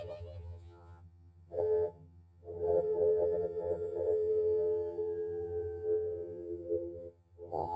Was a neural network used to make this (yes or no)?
yes